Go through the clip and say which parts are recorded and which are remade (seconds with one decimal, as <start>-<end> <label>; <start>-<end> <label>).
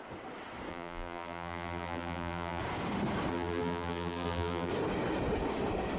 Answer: 0.0-0.7 recorded; 0.7-2.6 remade; 2.6-3.3 recorded; 3.3-4.7 remade; 4.7-6.0 recorded